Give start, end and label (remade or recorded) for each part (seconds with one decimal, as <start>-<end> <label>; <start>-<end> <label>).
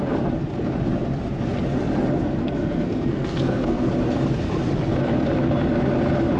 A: 0.0-2.4 recorded; 2.4-3.9 remade; 3.9-6.4 recorded